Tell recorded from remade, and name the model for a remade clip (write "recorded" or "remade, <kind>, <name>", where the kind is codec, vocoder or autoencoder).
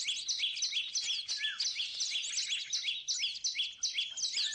recorded